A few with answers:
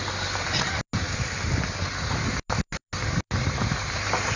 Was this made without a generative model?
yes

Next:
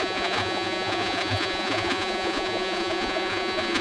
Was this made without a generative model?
no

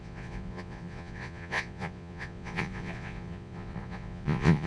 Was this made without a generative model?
no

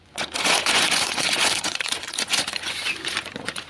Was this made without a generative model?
no